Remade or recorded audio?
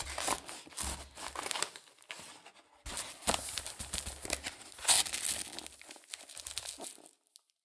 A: recorded